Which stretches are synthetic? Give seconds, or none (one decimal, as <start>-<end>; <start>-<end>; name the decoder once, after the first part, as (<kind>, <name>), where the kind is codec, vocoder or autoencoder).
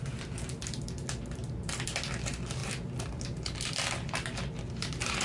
none